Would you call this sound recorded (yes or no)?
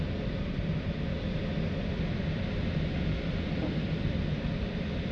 yes